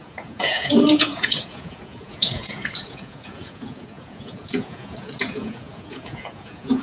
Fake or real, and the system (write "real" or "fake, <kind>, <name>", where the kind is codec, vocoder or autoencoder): fake, vocoder, Vocos